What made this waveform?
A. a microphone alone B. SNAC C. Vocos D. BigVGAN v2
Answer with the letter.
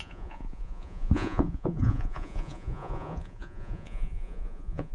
C